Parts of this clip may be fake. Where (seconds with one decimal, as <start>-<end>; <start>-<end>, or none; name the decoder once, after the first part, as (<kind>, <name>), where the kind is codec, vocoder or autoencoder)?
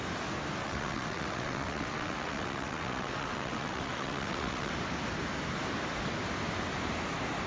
0.6-4.7 (vocoder, WaveNeXt)